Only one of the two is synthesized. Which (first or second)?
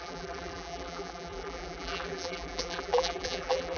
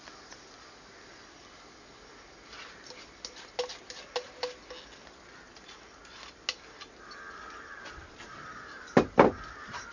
first